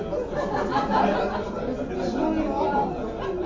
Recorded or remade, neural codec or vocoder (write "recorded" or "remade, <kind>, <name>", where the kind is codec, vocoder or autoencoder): recorded